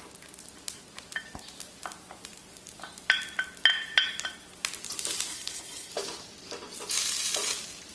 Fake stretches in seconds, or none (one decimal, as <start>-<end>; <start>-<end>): 5.3-5.9